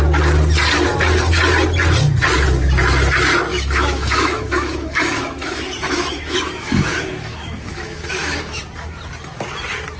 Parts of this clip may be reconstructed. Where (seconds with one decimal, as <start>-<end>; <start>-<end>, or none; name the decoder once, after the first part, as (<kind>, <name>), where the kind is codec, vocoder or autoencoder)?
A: 3.5-8.6 (autoencoder, DAC-VAE)